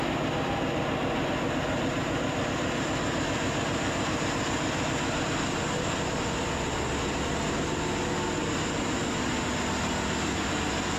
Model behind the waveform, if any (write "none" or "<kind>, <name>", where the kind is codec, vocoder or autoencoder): none